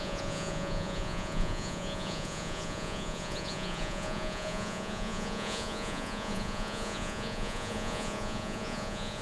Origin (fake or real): fake